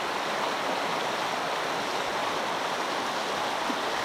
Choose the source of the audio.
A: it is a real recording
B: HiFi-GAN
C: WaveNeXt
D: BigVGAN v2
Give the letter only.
A